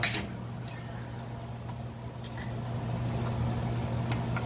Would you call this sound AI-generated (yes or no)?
no